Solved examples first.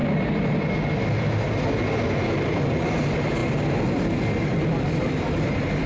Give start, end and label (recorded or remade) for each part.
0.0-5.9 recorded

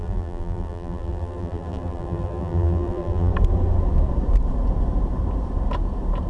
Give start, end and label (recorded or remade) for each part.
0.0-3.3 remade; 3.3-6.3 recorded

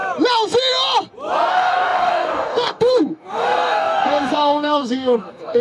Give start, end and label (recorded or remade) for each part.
0.0-1.5 recorded; 1.5-5.6 remade

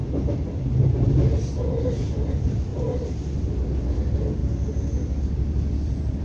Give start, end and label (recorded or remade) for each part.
0.0-6.2 recorded

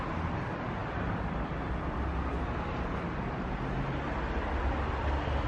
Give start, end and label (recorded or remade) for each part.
0.0-5.5 recorded

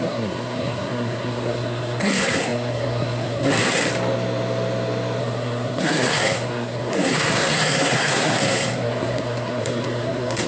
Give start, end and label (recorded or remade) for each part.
0.0-3.8 remade; 3.8-5.2 recorded; 5.2-10.5 remade

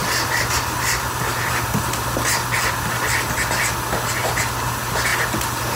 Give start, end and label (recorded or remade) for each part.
0.0-1.2 remade; 1.2-5.8 recorded